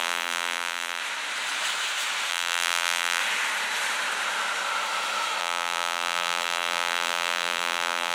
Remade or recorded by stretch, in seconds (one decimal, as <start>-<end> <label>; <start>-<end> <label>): 0.0-1.0 remade; 1.0-2.3 recorded; 2.3-3.2 remade; 3.2-5.4 recorded; 5.4-8.1 remade